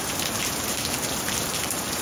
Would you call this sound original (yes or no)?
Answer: no